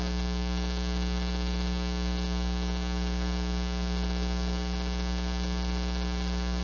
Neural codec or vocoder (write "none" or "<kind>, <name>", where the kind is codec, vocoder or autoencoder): codec, DAC